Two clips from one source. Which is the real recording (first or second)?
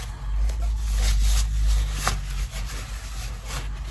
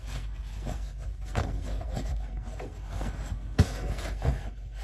first